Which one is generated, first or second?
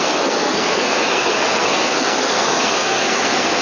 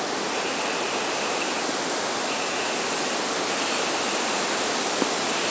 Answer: first